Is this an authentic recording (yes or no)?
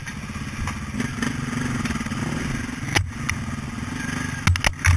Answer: yes